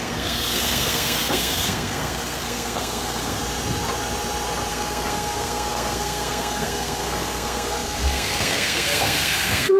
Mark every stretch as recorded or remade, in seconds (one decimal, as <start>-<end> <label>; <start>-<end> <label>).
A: 0.0-3.4 remade; 3.4-4.7 recorded; 4.7-9.8 remade